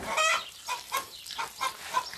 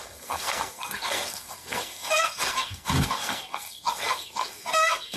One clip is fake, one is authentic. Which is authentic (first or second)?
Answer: first